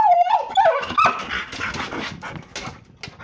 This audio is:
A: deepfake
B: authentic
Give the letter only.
B